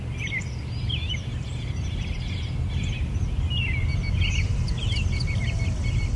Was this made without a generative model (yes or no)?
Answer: yes